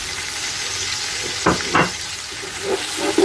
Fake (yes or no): no